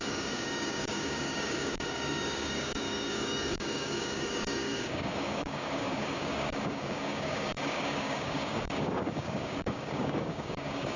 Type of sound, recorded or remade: remade